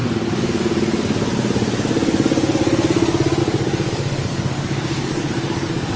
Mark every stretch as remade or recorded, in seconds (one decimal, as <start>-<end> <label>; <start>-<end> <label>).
0.0-3.4 recorded; 3.4-6.0 remade